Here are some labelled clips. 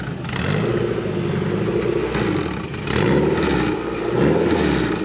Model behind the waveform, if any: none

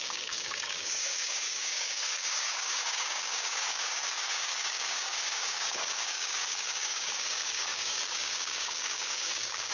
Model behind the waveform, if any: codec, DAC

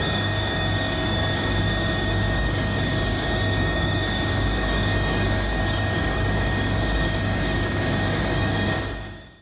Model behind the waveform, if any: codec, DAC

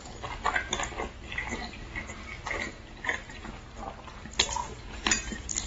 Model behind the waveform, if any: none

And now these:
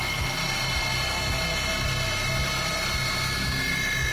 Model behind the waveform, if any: none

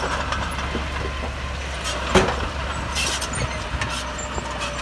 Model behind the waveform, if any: none